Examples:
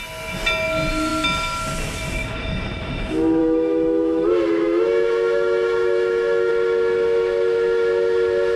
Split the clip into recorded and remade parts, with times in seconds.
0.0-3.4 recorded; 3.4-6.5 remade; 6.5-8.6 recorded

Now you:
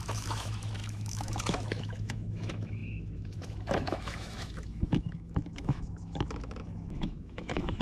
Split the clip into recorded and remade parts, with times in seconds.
0.0-7.8 remade

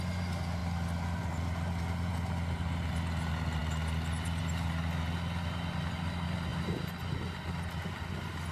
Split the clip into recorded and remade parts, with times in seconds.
0.0-8.5 recorded

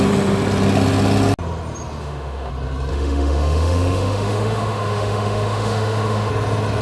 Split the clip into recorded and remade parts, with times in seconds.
0.0-2.0 recorded; 2.0-2.5 remade; 2.5-2.9 recorded; 2.9-6.3 remade; 6.3-6.8 recorded

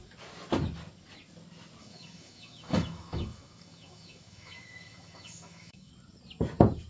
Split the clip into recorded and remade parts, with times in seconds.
0.0-1.8 recorded; 1.8-5.9 remade; 5.9-6.9 recorded